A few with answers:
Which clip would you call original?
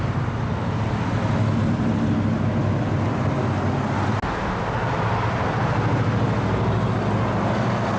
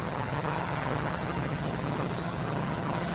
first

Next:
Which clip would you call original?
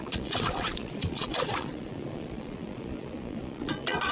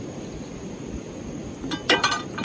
second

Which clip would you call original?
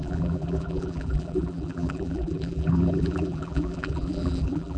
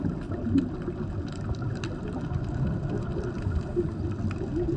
second